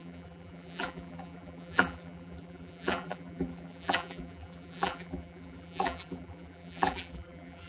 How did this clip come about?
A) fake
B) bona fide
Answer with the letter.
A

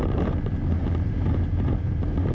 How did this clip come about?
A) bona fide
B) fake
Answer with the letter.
B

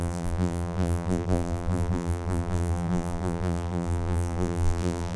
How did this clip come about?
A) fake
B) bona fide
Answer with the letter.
A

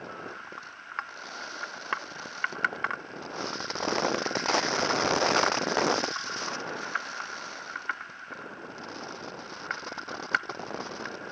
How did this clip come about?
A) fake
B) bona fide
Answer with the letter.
A